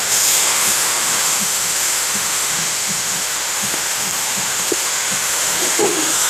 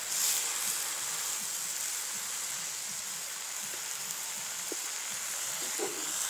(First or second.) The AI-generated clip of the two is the first